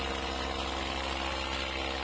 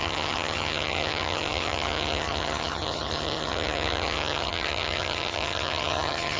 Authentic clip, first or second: first